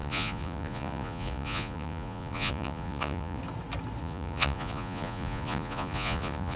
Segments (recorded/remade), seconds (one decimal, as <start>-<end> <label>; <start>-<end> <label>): 0.0-3.4 remade; 3.4-4.0 recorded; 4.0-6.6 remade